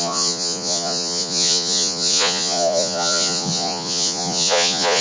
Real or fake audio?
fake